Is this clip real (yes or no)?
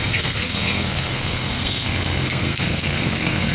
no